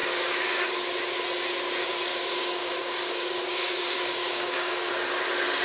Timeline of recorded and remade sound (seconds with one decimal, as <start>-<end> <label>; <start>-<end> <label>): 0.0-0.8 remade; 0.8-2.1 recorded; 2.1-4.9 remade; 4.9-5.6 recorded